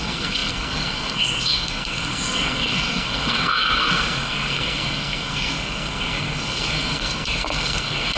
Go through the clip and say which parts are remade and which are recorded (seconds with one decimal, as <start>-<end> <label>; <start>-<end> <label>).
0.0-8.2 remade